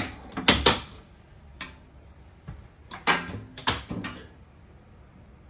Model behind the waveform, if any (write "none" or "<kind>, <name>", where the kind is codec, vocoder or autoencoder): none